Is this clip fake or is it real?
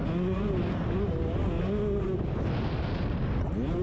real